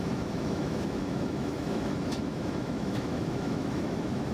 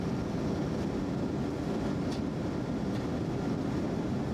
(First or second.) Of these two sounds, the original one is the second